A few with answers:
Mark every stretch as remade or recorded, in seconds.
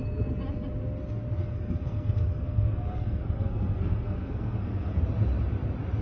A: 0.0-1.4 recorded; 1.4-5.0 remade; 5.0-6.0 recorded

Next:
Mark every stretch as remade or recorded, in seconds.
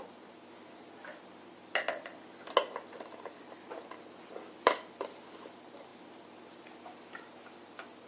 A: 0.0-8.1 recorded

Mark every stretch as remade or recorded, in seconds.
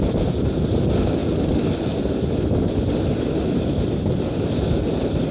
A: 0.0-5.3 recorded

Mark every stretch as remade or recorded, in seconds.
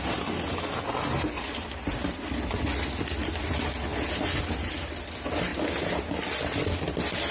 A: 0.0-7.3 recorded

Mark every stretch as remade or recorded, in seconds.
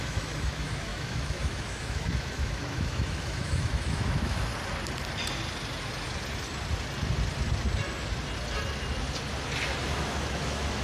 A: 0.0-4.5 remade; 4.5-9.8 recorded; 9.8-10.8 remade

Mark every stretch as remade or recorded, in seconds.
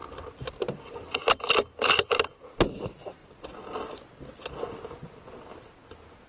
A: 0.0-1.0 remade; 1.0-6.3 recorded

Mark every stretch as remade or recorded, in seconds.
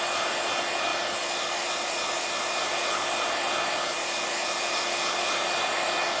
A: 0.0-6.2 recorded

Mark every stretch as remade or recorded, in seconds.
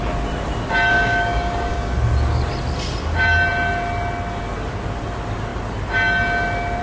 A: 0.0-0.9 recorded; 0.9-1.9 remade; 1.9-6.8 recorded